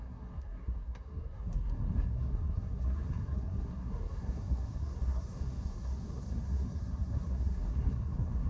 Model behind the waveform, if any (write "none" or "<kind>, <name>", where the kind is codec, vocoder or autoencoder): codec, SNAC